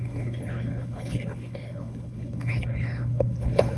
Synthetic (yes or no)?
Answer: yes